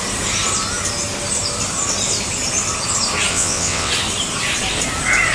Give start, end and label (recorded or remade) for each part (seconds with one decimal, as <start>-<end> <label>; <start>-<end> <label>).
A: 0.0-3.3 recorded; 3.3-3.9 remade; 3.9-5.3 recorded